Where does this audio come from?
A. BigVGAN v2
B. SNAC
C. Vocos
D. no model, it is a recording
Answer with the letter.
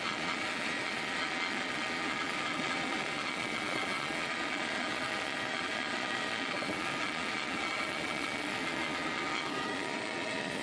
C